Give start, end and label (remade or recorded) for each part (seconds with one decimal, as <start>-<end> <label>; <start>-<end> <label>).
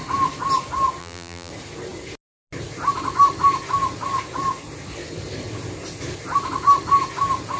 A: 0.0-1.0 recorded; 1.0-1.5 remade; 1.5-7.6 recorded